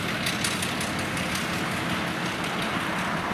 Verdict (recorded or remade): recorded